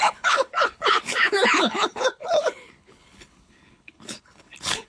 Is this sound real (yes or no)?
no